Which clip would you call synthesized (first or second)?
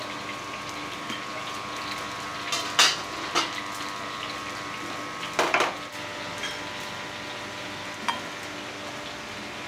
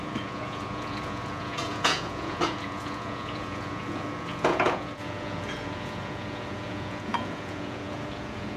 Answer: second